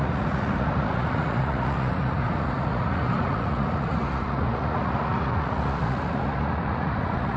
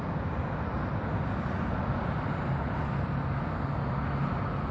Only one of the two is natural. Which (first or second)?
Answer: second